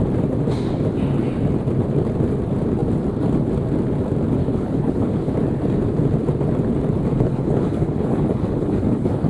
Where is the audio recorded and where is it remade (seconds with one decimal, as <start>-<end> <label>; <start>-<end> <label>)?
0.0-4.4 recorded; 4.4-5.3 remade; 5.3-7.1 recorded; 7.1-9.3 remade